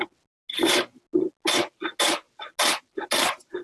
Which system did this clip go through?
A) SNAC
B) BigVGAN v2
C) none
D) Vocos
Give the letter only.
C